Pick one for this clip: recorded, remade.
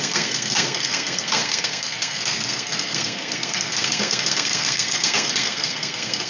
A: remade